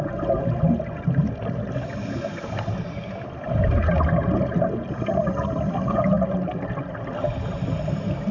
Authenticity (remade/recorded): recorded